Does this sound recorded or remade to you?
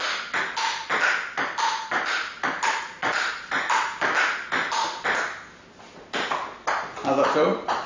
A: recorded